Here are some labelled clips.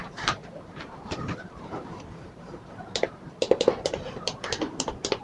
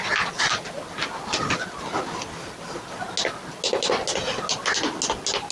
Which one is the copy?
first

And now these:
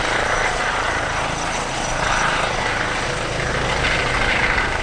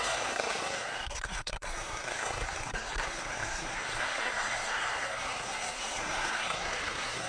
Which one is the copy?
second